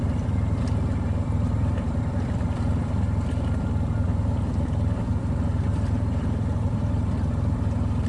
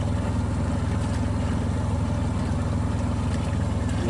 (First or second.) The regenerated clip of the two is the first